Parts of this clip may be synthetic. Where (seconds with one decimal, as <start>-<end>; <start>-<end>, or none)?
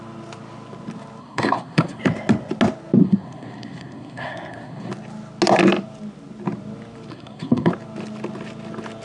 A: 1.2-2.0; 3.0-4.9; 7.1-7.7